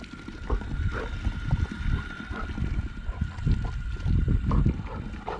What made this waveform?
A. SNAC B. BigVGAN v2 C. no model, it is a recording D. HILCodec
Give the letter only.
C